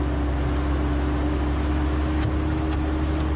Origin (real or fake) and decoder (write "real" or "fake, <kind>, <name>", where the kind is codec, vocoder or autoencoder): real